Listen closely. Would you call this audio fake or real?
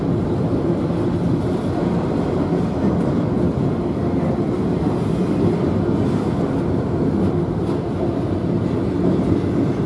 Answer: fake